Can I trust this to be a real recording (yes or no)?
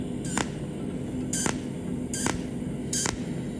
yes